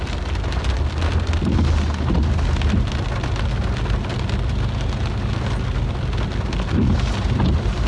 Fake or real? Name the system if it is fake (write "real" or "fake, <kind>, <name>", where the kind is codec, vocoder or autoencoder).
real